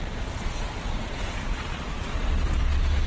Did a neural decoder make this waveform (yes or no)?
yes